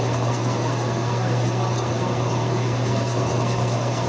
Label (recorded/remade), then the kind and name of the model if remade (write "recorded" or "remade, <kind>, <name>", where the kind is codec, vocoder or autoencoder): remade, codec, SNAC